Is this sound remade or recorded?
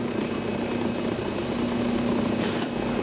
recorded